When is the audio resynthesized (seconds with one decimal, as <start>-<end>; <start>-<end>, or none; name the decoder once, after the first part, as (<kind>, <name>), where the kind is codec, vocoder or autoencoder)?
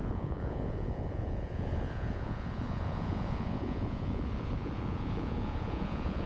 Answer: 0.0-6.3 (vocoder, Vocos)